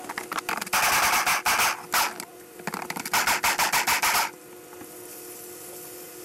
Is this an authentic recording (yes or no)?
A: yes